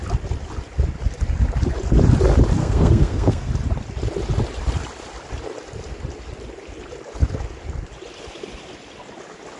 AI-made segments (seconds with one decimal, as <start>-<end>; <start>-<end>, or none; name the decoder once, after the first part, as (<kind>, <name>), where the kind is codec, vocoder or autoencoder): 2.6-3.5 (codec, SNAC)

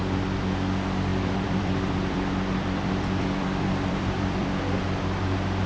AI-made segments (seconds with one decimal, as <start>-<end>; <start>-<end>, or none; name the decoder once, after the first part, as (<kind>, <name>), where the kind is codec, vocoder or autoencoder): 1.1-4.5 (vocoder, BigVGAN v2)